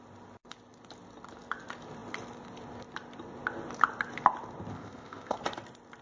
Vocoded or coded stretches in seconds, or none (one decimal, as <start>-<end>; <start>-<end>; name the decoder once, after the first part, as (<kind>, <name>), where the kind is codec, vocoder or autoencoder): 4.7-5.4 (codec, ZipCodec)